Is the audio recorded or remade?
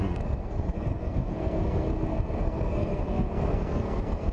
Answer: remade